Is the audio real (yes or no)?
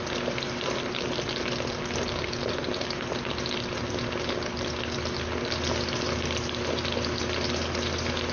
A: yes